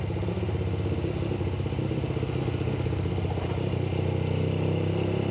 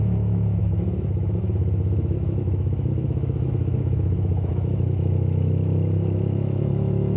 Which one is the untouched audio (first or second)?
first